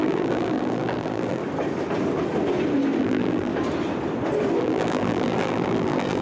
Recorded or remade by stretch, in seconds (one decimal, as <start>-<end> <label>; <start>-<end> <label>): 0.0-1.4 remade; 1.4-3.0 recorded; 3.0-3.5 remade; 3.5-4.6 recorded; 4.6-6.2 remade